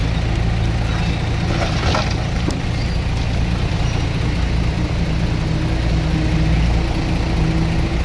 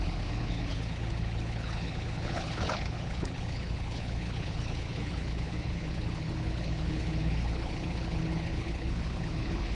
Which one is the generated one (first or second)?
second